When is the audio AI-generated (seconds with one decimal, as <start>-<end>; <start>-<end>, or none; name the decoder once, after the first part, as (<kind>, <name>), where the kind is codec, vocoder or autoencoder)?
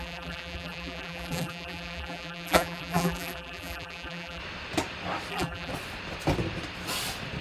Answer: 0.0-4.4 (vocoder, BigVGAN v2); 5.3-5.7